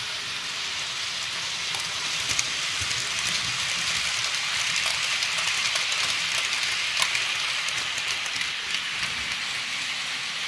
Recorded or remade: recorded